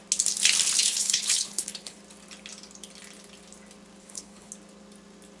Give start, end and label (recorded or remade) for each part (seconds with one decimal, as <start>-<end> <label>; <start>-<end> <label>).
0.0-0.8 recorded; 0.8-2.0 remade; 2.0-4.0 recorded; 4.0-4.5 remade; 4.5-5.4 recorded